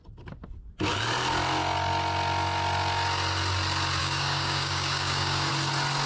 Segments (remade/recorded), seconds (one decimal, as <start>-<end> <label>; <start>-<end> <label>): 0.0-4.0 recorded; 4.0-5.5 remade; 5.5-6.1 recorded